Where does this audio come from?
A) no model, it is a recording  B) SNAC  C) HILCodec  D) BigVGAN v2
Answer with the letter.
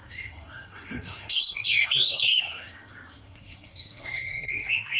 B